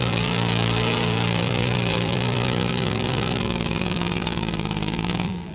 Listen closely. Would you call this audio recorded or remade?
remade